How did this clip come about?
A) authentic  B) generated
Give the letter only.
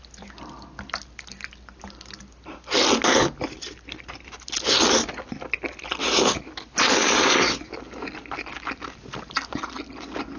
A